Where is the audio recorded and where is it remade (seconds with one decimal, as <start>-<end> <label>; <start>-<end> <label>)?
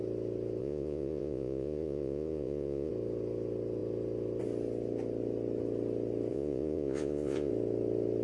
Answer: 0.0-0.6 recorded; 0.6-2.9 remade; 2.9-6.3 recorded; 6.3-7.5 remade; 7.5-8.2 recorded